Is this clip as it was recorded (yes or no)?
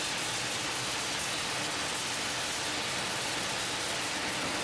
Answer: yes